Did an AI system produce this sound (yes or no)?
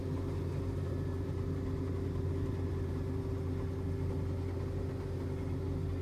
no